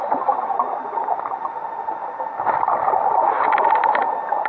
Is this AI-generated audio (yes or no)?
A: no